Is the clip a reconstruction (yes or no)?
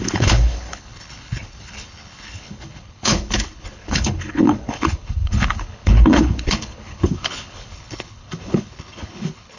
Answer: yes